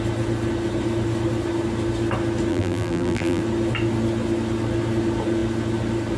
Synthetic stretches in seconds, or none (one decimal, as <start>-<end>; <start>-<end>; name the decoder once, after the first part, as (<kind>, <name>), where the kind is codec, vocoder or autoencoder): 2.5-3.4 (vocoder, BigVGAN v2)